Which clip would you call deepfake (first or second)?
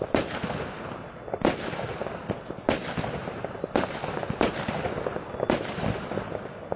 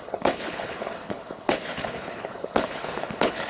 second